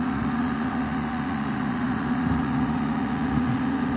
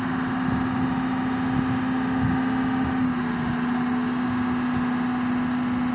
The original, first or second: second